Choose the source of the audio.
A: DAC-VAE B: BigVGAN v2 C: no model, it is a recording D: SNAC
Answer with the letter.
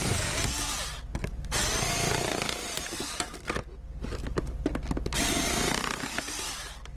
C